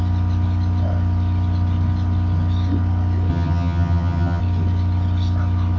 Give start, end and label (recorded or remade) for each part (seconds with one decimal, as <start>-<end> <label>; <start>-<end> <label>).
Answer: 0.0-3.3 recorded; 3.3-4.4 remade; 4.4-5.8 recorded